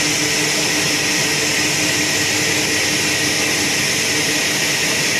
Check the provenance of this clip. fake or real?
real